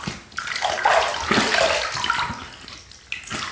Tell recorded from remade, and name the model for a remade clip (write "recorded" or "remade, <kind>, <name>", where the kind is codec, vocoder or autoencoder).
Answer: recorded